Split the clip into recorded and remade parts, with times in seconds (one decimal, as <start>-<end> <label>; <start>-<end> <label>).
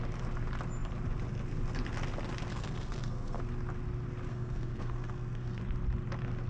0.0-2.5 recorded; 2.5-3.4 remade; 3.4-4.3 recorded; 4.3-5.6 remade; 5.6-6.5 recorded